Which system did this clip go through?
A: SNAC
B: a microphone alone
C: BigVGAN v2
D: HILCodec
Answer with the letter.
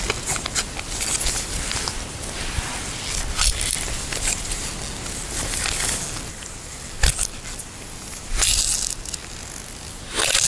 B